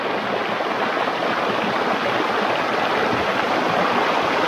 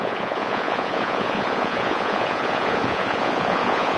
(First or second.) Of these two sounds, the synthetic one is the second